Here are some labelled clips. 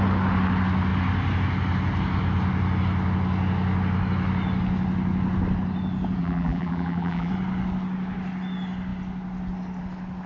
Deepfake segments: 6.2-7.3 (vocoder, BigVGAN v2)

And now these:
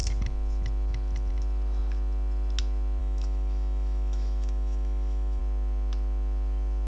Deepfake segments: 3.0-5.4 (autoencoder, DAC-VAE)

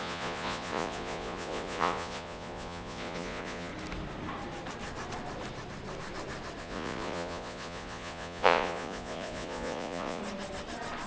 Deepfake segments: 0.0-3.7 (vocoder, Vocos); 6.6-10.2

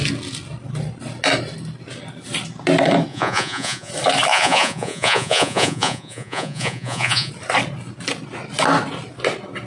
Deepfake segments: 3.1-3.9 (vocoder, Vocos); 4.3-7.3

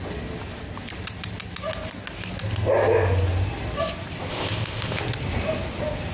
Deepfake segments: 4.3-5.0 (codec, ZipCodec)

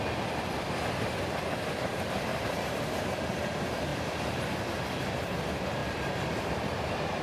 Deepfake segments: 2.3-3.0 (vocoder, BigVGAN v2); 3.9-4.4; 5.8-7.2

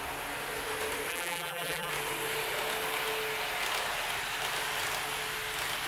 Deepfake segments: 1.1-1.9 (vocoder, BigVGAN v2)

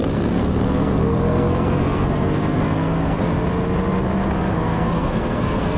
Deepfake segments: 0.0-3.3 (codec, SNAC); 4.5-5.8